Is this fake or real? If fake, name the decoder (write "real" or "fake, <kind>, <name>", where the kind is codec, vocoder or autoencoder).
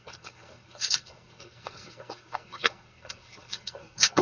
fake, codec, SNAC